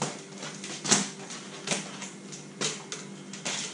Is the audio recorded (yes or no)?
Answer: yes